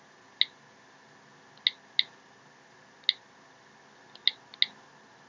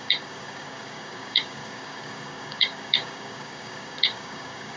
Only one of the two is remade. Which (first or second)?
second